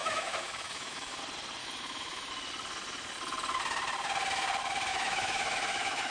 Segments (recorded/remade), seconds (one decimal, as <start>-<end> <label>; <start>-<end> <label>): 0.0-1.2 remade; 1.2-1.6 recorded; 1.6-2.3 remade; 2.3-4.9 recorded; 4.9-6.1 remade